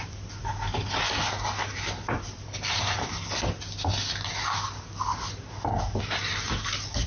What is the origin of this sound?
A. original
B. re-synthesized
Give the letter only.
A